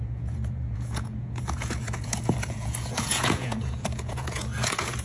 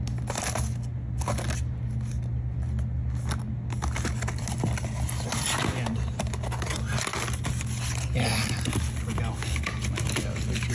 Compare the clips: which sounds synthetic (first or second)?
first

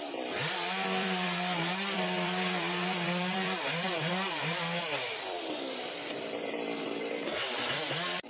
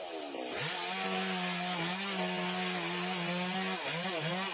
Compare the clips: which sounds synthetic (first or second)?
first